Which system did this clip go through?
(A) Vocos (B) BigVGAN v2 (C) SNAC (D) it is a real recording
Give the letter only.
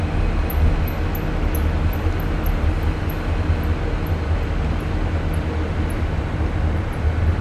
D